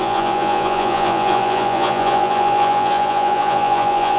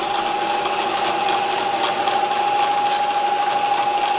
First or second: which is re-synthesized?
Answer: first